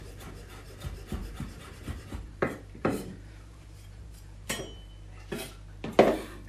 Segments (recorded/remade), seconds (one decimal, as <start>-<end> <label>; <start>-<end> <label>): 0.0-1.2 recorded; 1.2-4.6 remade; 4.6-6.5 recorded